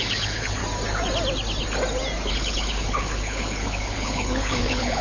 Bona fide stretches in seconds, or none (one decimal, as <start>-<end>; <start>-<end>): 0.6-2.3